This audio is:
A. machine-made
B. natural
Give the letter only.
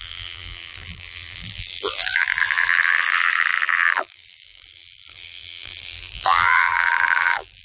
A